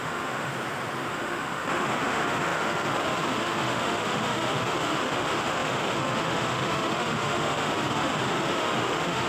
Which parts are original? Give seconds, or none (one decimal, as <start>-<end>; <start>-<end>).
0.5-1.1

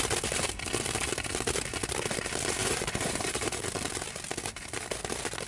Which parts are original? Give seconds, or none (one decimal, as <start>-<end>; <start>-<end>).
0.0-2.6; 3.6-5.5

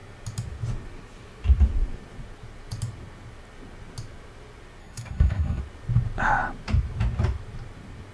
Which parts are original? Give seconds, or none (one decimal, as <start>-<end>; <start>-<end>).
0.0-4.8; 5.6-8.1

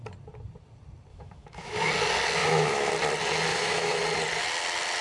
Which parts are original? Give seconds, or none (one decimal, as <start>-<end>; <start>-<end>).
0.0-1.1; 1.9-2.4; 2.9-3.5; 4.0-5.0

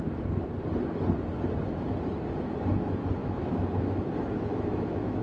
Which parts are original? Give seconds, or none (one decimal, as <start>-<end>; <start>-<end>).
0.0-3.2; 4.1-4.5

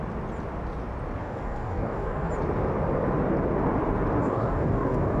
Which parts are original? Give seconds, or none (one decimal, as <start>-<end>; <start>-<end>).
0.0-1.2; 2.3-4.2

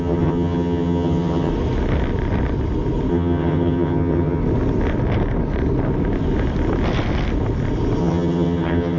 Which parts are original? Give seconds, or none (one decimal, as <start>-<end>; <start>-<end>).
1.5-3.1; 4.4-8.0

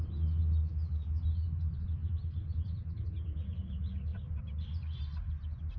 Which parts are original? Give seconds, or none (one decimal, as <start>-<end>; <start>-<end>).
0.0-2.0; 3.1-4.1; 5.0-5.8